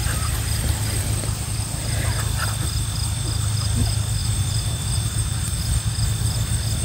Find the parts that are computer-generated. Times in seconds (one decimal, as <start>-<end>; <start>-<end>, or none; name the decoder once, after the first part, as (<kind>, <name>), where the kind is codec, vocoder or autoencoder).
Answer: 4.2-5.6 (vocoder, BigVGAN v2)

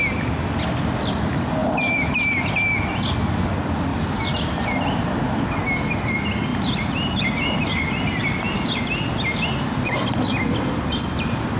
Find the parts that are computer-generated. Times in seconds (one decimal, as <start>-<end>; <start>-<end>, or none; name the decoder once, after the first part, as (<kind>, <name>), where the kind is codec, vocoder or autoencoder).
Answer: 1.6-2.6 (vocoder, BigVGAN v2); 3.9-5.4; 6.5-8.8

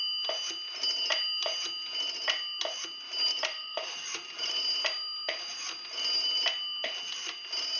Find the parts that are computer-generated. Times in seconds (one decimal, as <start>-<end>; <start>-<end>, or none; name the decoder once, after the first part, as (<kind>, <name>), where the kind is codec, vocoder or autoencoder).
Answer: 3.3-4.6 (vocoder, BigVGAN v2)

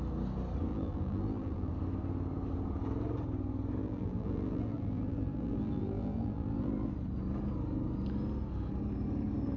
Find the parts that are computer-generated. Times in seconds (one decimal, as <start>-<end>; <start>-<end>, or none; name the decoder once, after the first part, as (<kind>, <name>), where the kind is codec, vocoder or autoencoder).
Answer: 0.7-1.7 (vocoder, BigVGAN v2); 3.8-6.9

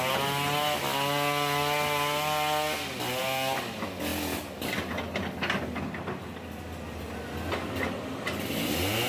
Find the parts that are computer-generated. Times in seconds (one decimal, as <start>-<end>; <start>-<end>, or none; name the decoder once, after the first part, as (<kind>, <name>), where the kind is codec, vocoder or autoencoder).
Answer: none

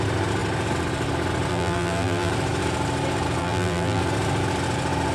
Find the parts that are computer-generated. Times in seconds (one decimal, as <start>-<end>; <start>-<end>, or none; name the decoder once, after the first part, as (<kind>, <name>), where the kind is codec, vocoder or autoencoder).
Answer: 1.5-2.3 (vocoder, BigVGAN v2); 3.4-4.0

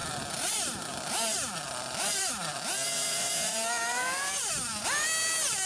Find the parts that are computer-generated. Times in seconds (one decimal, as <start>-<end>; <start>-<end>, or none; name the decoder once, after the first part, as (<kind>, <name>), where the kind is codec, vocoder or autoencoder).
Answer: 3.5-4.5 (vocoder, BigVGAN v2)

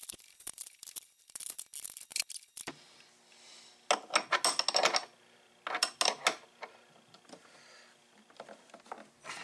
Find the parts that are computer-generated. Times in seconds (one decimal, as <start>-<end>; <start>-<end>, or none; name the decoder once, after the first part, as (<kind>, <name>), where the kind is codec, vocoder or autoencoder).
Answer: none